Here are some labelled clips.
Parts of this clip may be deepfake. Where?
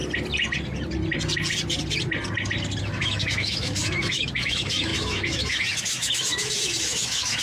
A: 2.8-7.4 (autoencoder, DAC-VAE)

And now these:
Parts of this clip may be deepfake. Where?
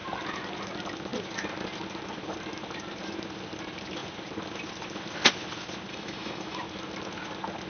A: 5.9-6.6 (autoencoder, DAC-VAE)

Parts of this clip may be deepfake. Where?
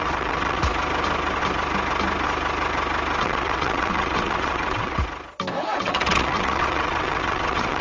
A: 0.0-0.6 (vocoder, WaveNeXt); 3.2-5.0; 5.6-7.8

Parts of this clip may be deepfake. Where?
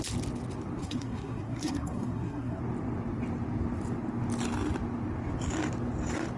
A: 0.8-2.6 (codec, SNAC)